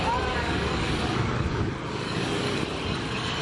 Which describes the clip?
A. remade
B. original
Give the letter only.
A